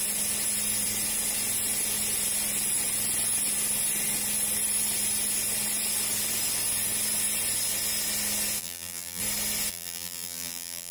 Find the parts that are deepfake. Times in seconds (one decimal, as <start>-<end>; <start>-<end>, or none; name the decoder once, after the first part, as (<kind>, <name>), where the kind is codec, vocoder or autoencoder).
8.6-9.2 (vocoder, BigVGAN v2); 9.7-10.9

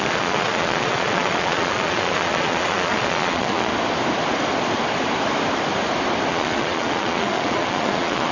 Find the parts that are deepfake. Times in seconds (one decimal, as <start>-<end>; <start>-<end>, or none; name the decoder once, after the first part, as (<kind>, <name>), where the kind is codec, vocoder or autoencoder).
0.0-3.7 (vocoder, Vocos); 6.3-8.3

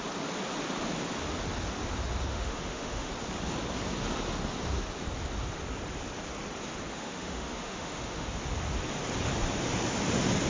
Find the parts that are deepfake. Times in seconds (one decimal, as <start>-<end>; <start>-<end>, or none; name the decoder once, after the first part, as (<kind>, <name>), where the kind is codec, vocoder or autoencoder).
2.3-3.1 (autoencoder, DAC-VAE); 6.9-8.3

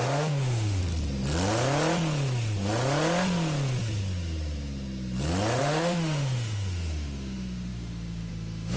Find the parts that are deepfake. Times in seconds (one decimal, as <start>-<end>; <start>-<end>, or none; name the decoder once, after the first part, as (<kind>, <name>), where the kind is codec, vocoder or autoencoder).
0.0-0.8 (autoencoder, DAC-VAE); 5.6-8.8

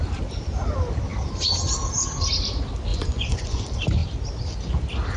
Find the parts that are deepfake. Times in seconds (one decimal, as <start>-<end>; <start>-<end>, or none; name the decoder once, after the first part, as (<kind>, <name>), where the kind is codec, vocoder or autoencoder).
2.9-3.6 (vocoder, Vocos)